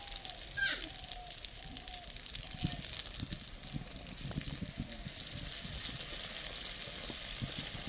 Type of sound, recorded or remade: recorded